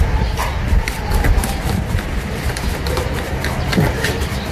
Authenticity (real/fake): fake